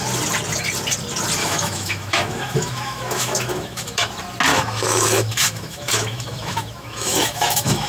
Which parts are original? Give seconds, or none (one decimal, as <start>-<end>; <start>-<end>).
0.0-1.4; 4.1-4.5